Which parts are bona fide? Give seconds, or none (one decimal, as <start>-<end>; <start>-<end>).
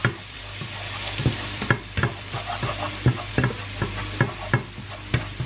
3.3-5.5